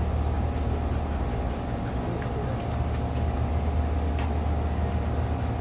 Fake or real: real